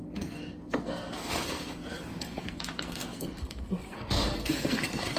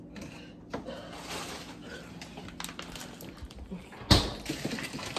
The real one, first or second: second